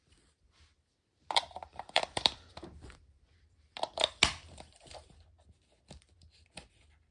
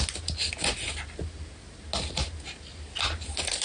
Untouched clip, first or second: second